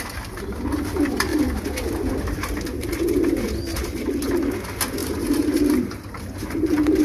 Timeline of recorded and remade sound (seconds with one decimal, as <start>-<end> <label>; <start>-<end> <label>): 0.0-5.0 recorded; 5.0-7.0 remade